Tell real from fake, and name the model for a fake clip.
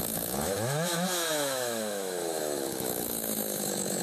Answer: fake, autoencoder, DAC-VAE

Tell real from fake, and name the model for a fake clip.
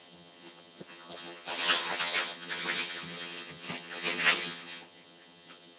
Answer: fake, vocoder, HiFi-GAN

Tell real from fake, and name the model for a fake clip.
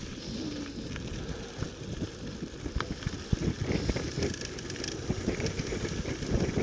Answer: real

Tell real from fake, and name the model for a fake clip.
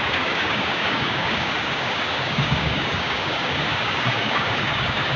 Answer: fake, codec, DAC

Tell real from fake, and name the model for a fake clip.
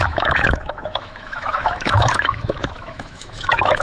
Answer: fake, autoencoder, DAC-VAE